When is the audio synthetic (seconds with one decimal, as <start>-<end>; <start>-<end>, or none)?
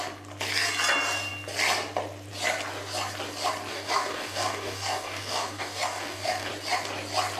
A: 3.7-6.5